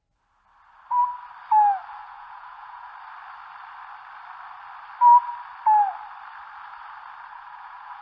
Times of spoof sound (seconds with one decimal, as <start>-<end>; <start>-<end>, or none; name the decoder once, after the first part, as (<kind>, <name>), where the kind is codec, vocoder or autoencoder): 2.0-2.9 (vocoder, Vocos); 7.3-8.0